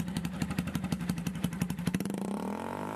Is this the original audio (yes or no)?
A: no